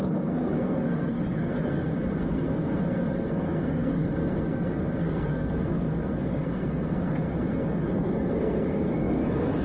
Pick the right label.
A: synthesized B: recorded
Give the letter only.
A